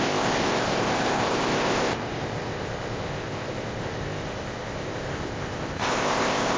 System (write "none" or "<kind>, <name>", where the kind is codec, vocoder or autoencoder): codec, ZipCodec